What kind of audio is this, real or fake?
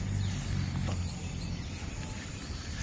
real